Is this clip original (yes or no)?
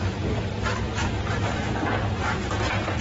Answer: yes